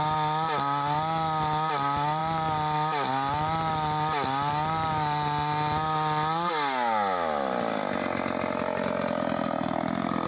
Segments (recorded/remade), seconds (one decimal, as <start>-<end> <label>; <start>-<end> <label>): 0.0-10.3 recorded